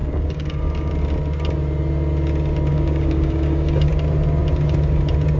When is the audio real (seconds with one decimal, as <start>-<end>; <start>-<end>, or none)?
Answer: 0.9-2.7; 3.9-5.4